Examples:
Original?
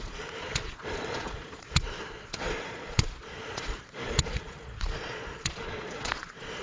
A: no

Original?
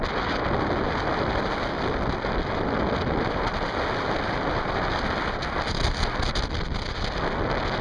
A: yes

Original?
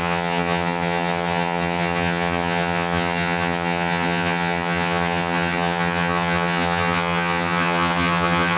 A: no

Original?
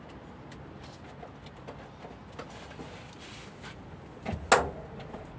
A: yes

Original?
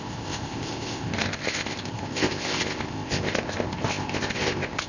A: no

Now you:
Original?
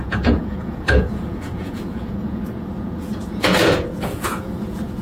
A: no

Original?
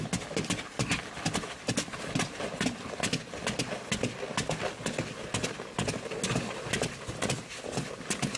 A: yes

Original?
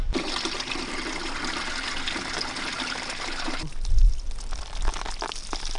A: yes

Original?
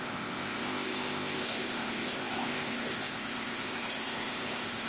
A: no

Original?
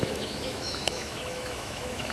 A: no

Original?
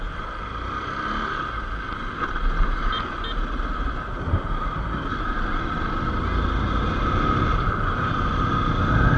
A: yes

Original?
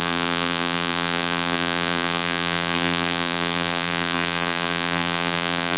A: no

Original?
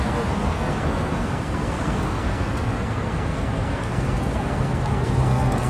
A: no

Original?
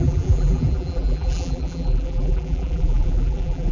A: no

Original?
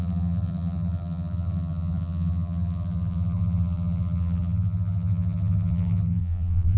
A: no